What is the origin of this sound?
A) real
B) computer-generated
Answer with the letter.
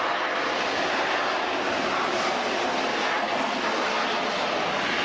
A